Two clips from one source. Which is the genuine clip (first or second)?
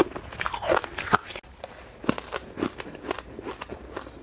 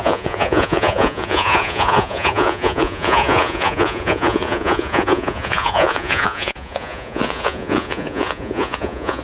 first